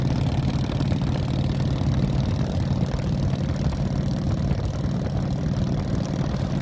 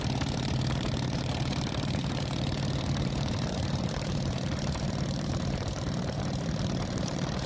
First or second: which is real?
first